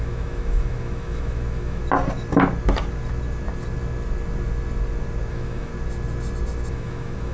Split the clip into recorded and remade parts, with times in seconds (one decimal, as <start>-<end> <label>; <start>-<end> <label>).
0.0-1.8 remade; 1.8-5.3 recorded; 5.3-5.7 remade; 5.7-6.7 recorded; 6.7-7.3 remade